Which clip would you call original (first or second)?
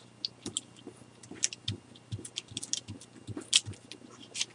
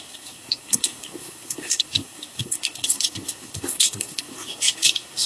first